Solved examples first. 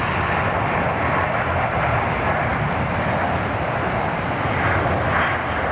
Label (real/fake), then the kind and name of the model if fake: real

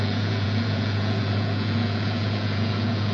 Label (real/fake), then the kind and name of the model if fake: fake, vocoder, Vocos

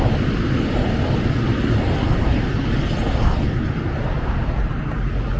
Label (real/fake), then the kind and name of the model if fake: real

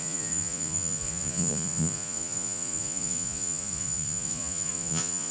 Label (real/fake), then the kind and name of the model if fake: fake, vocoder, Vocos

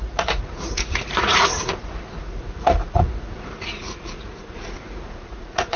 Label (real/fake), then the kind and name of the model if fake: fake, vocoder, Vocos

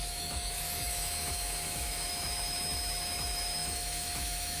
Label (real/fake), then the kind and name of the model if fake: fake, autoencoder, DAC-VAE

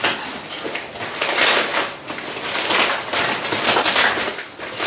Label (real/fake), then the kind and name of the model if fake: real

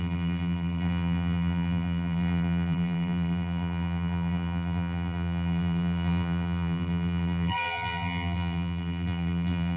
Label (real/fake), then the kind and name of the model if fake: fake, vocoder, BigVGAN v2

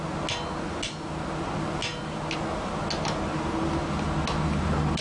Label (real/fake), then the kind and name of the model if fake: real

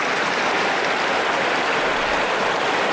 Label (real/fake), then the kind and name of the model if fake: real